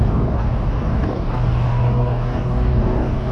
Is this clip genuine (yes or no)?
no